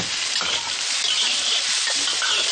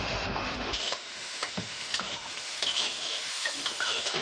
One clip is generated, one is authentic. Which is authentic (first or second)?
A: first